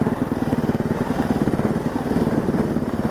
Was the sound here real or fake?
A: real